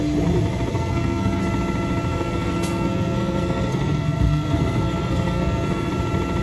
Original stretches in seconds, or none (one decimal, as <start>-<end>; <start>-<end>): 0.0-0.7; 1.4-2.1; 5.9-6.4